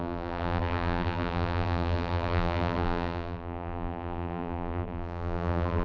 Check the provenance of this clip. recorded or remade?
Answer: remade